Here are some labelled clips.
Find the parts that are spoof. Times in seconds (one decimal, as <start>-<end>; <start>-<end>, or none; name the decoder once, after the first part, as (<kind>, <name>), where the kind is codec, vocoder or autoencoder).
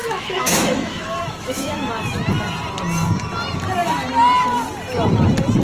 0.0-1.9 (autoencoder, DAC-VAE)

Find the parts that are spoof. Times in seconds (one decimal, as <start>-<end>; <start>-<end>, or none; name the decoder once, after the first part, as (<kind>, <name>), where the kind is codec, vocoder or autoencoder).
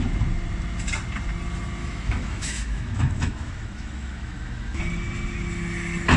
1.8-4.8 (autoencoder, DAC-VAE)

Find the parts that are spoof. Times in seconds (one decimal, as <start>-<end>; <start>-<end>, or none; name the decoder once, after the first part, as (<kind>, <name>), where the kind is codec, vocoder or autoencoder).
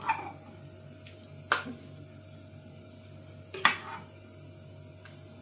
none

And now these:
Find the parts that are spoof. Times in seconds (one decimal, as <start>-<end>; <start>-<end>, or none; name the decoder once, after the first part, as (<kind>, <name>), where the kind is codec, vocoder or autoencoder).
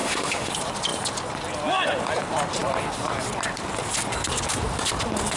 0.0-0.5 (autoencoder, DAC-VAE)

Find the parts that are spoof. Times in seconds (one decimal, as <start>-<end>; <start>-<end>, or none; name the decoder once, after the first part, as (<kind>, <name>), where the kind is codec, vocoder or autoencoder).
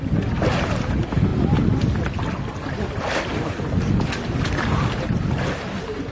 none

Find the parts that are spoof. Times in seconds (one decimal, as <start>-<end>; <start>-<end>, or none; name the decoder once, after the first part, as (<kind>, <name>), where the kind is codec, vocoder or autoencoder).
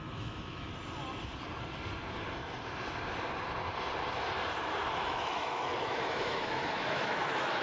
0.0-0.7 (autoencoder, DAC-VAE); 5.0-7.6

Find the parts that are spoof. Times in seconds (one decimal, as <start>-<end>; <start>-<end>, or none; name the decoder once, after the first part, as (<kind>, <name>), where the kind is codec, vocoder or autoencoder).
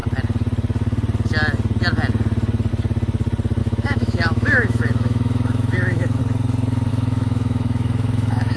3.6-6.2 (autoencoder, DAC-VAE); 6.9-8.6